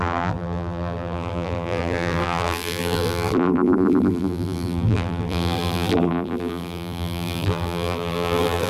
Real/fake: fake